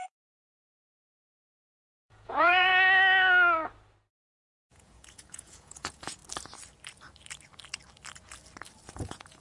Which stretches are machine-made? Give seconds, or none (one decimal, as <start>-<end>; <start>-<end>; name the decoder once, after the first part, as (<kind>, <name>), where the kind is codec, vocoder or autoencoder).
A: 0.0-2.7 (vocoder, Vocos); 4.5-6.2; 8.9-9.4